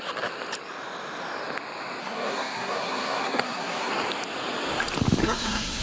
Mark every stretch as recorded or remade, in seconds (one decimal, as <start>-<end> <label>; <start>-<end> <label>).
0.0-2.0 recorded; 2.0-3.9 remade; 3.9-5.2 recorded; 5.2-5.8 remade